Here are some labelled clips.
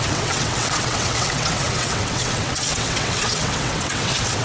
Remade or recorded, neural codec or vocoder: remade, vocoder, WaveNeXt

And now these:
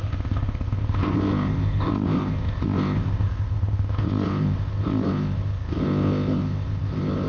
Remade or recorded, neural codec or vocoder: remade, codec, ZipCodec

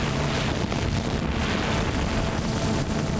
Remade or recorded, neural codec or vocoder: recorded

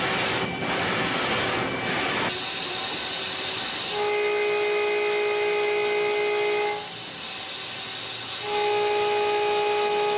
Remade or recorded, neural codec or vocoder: recorded